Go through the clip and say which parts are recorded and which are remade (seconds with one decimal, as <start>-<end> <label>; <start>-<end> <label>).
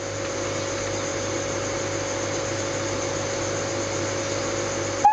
0.0-5.1 recorded